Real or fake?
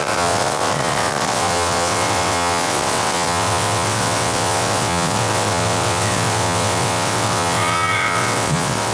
fake